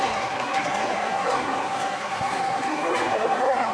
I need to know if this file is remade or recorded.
remade